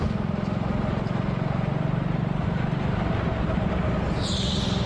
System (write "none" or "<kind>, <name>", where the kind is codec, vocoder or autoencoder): none